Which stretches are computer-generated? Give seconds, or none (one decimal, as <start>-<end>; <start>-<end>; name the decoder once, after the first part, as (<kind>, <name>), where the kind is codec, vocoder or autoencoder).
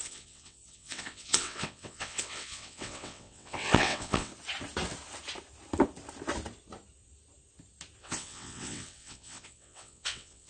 0.0-4.3 (vocoder, WaveNeXt); 8.0-10.5